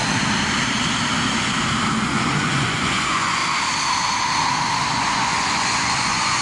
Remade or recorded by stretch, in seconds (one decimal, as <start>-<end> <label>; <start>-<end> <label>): 0.0-1.9 recorded; 1.9-3.4 remade; 3.4-4.9 recorded; 4.9-6.4 remade